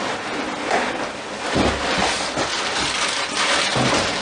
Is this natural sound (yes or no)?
yes